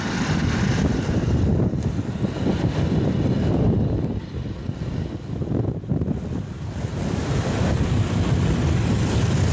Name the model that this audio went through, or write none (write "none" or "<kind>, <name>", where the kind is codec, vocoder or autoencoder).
vocoder, BigVGAN v2